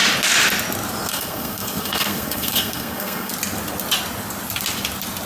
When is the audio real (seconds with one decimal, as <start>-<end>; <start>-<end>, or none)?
0.0-1.1; 3.3-5.3